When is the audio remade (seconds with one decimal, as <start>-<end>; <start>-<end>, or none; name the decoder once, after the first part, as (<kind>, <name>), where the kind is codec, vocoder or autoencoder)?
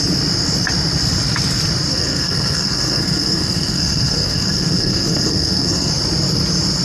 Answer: 1.9-5.9 (codec, SNAC)